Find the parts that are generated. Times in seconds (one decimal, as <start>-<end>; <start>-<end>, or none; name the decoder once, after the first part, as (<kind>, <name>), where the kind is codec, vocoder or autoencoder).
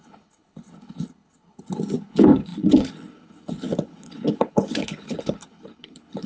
0.0-6.3 (codec, HILCodec)